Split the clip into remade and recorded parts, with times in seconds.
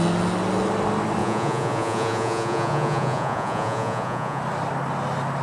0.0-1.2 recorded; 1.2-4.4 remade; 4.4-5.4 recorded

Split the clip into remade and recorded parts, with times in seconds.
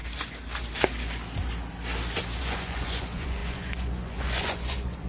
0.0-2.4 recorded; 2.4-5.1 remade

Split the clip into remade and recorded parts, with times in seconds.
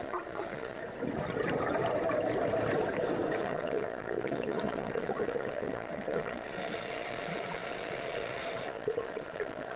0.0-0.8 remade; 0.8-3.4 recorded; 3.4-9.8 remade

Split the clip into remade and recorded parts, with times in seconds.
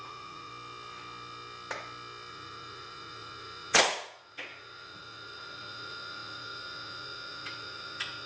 0.0-0.5 remade; 0.5-2.3 recorded; 2.3-8.3 remade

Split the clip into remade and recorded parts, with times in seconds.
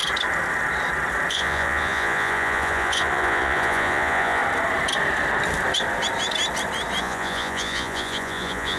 0.0-1.3 recorded; 1.3-4.4 remade; 4.4-7.0 recorded; 7.0-8.8 remade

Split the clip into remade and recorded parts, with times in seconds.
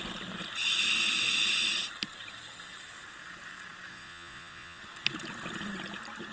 0.0-3.9 recorded; 3.9-4.8 remade; 4.8-6.3 recorded